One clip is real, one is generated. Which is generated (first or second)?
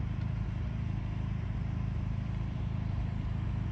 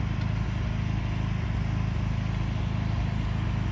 first